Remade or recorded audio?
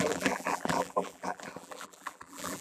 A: remade